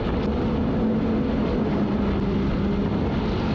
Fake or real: real